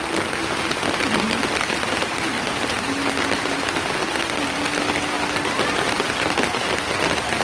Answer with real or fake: real